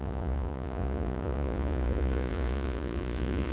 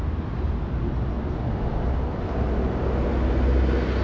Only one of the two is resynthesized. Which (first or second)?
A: first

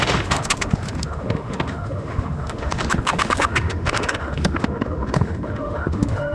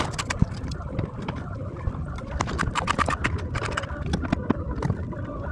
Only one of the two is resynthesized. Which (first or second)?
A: first